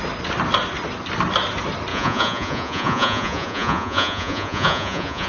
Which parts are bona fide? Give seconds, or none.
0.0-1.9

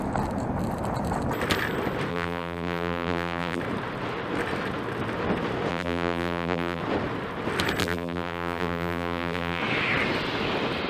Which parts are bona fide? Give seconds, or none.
0.0-2.1; 3.6-5.7; 6.8-7.8; 9.6-10.9

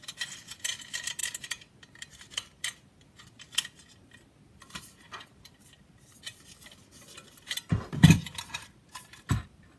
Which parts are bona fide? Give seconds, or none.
0.0-9.8